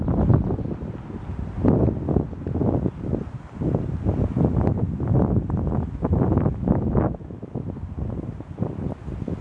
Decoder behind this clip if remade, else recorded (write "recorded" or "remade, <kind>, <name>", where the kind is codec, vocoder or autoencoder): recorded